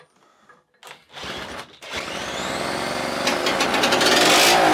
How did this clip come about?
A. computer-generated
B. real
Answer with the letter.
B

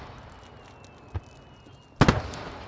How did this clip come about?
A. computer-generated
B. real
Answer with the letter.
B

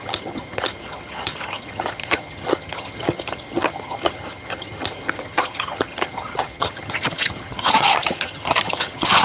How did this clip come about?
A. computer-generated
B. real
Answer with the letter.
A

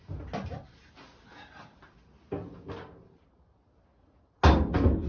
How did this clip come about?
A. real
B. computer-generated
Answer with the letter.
A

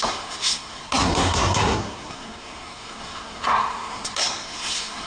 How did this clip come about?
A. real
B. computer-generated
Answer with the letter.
B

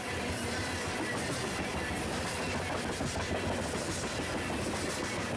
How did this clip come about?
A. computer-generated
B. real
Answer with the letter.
B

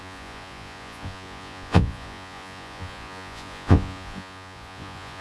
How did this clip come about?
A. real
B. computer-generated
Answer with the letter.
B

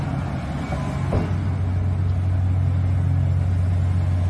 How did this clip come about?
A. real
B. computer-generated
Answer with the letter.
A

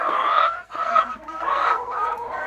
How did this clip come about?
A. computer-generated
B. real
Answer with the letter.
A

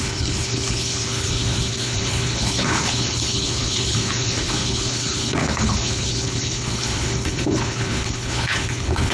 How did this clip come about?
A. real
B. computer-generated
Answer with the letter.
B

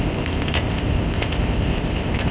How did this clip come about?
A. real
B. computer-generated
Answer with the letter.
B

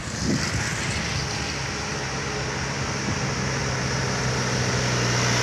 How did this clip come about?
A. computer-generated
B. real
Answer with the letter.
B